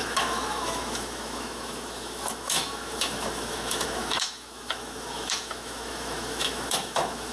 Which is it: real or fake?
fake